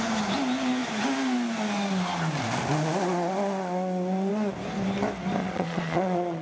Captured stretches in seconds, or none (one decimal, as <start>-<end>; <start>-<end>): 0.0-5.4